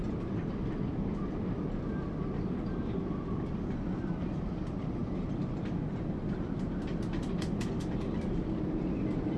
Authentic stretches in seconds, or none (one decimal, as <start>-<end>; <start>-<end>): 0.0-9.4